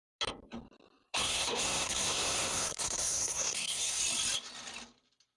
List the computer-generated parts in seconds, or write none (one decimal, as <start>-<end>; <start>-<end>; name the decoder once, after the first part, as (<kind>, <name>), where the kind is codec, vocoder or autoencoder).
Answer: 1.2-4.0 (codec, SNAC)